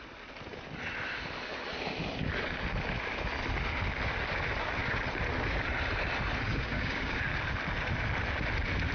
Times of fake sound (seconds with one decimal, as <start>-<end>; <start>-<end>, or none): 6.5-7.2